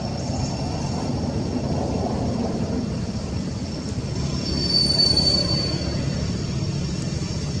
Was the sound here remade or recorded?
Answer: recorded